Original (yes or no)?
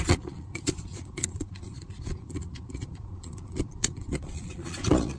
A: no